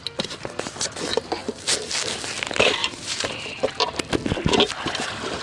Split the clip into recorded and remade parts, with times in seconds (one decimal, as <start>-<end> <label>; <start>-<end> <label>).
0.0-2.8 recorded; 2.8-3.8 remade; 3.8-5.4 recorded